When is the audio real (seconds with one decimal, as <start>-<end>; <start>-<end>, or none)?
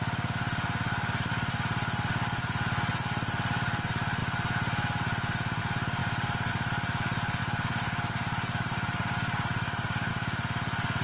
0.0-7.4; 10.1-11.0